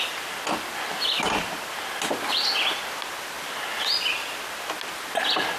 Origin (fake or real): real